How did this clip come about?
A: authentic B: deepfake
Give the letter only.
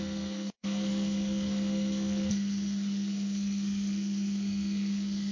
B